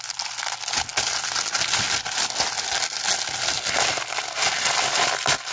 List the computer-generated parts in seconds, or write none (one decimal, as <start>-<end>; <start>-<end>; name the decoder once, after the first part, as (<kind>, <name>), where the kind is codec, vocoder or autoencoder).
none